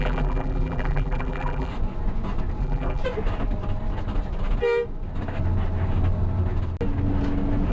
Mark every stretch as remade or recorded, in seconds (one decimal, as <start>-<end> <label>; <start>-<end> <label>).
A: 0.0-1.7 remade; 1.7-2.6 recorded; 2.6-3.0 remade; 3.0-7.7 recorded